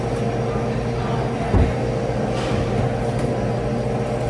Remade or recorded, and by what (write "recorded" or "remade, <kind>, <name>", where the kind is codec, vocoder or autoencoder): recorded